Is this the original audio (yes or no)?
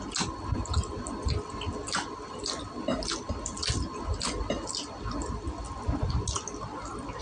yes